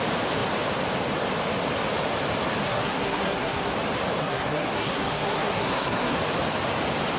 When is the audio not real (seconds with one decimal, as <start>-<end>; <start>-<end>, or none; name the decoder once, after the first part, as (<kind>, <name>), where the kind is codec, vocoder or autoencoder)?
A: 2.6-3.7 (codec, SNAC); 4.2-6.2